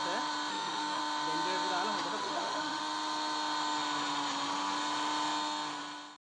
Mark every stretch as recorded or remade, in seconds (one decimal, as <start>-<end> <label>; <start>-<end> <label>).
0.0-0.5 recorded; 0.5-1.0 remade; 1.0-2.2 recorded; 2.2-2.8 remade; 2.8-6.3 recorded